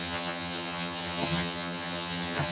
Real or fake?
fake